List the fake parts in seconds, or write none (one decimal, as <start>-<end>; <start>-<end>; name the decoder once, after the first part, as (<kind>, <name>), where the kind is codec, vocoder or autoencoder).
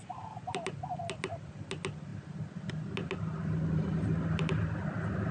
none